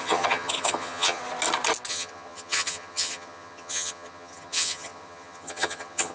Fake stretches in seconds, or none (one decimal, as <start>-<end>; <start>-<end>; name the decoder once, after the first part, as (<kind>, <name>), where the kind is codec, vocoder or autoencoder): 0.0-1.2 (vocoder, HiFi-GAN); 1.9-6.1